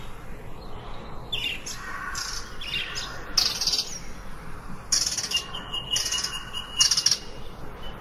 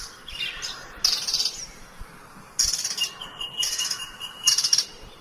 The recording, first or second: first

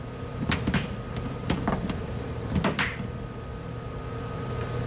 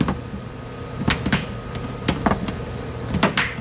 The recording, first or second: second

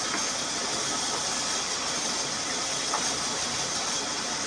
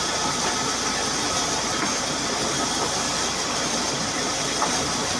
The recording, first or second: first